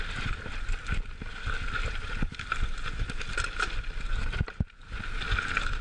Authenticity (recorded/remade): recorded